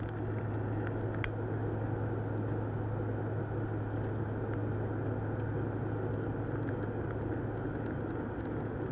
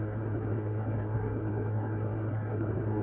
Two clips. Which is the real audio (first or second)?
first